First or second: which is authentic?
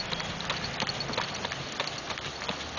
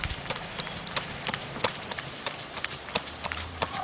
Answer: first